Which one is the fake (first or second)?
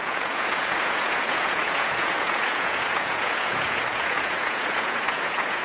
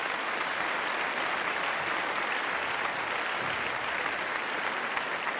first